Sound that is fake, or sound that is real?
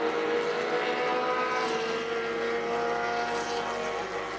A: real